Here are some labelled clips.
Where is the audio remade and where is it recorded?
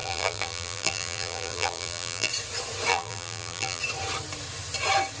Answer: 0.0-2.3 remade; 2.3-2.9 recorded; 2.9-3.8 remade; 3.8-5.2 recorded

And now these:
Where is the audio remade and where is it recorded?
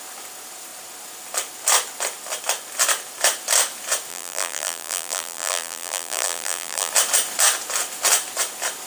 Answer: 0.0-4.1 recorded; 4.1-6.9 remade; 6.9-8.9 recorded